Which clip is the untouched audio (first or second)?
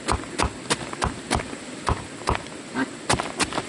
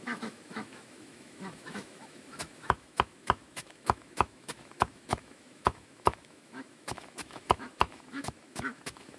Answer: first